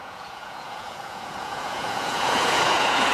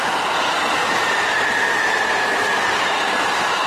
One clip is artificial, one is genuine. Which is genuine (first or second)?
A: second